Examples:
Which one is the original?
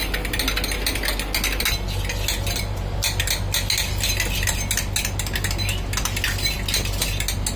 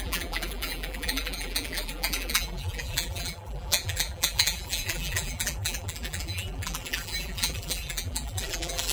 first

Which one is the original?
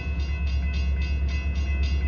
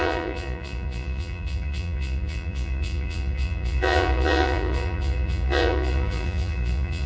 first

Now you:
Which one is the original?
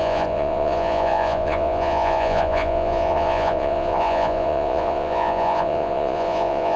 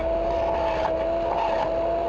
second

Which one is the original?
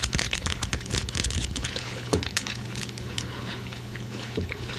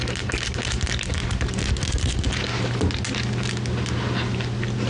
second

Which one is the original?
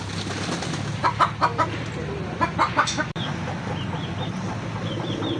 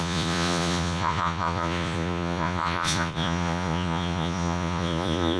first